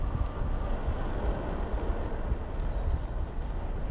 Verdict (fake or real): real